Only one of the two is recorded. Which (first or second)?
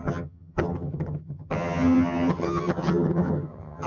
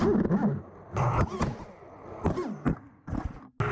second